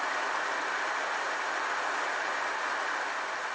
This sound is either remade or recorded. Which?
recorded